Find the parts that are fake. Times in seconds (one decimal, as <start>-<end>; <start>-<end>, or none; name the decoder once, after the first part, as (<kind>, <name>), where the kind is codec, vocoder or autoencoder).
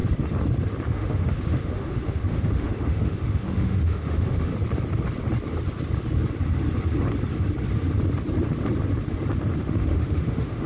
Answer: 0.9-4.5 (autoencoder, DAC-VAE); 9.6-10.7